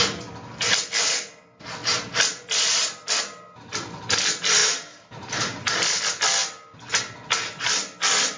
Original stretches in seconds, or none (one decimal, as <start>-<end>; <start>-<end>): 0.0-4.6; 5.6-8.4